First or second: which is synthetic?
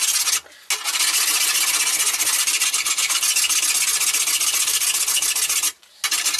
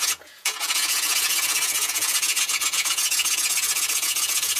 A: second